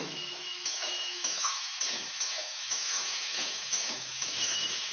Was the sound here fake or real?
fake